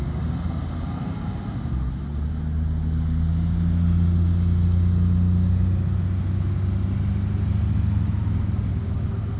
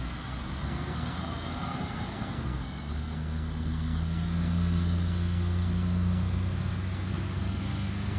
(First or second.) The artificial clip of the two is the second